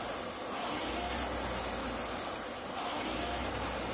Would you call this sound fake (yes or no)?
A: no